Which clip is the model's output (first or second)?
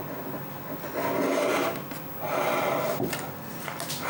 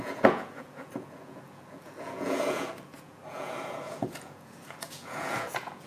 second